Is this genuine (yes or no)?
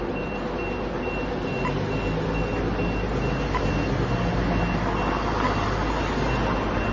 yes